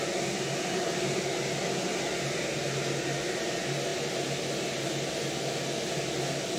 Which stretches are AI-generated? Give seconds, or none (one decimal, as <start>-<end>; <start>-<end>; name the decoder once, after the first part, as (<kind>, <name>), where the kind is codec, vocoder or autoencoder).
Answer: none